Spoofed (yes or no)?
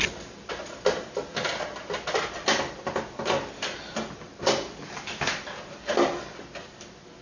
no